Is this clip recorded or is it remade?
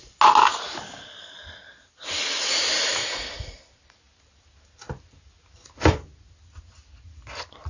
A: recorded